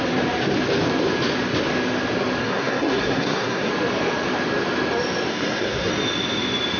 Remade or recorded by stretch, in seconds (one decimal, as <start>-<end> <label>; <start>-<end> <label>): 0.0-2.4 recorded; 2.4-3.7 remade; 3.7-5.3 recorded; 5.3-5.9 remade; 5.9-6.8 recorded